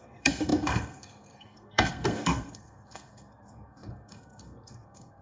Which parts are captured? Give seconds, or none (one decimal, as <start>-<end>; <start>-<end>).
none